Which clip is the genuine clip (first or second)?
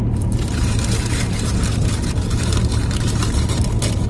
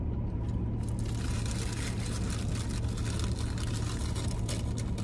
second